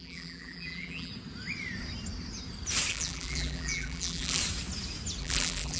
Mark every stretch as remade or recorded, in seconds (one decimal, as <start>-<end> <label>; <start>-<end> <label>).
0.0-1.1 remade; 1.1-2.9 recorded; 2.9-4.4 remade; 4.4-5.2 recorded; 5.2-5.8 remade